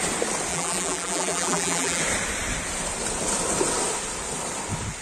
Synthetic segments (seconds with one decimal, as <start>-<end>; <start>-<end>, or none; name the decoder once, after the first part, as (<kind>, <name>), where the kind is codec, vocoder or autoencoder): 0.5-2.0 (vocoder, BigVGAN v2)